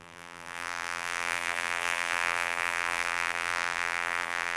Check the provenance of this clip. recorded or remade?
remade